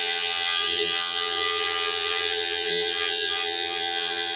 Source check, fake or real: fake